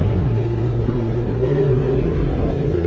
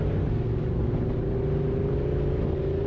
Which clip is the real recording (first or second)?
second